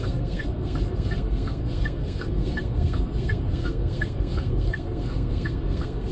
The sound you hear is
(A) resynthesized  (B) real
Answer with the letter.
A